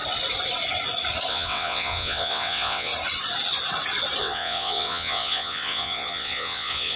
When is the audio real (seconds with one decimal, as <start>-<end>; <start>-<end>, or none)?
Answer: 0.0-1.3; 2.9-4.2